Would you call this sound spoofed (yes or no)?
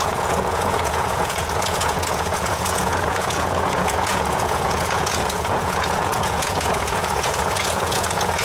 yes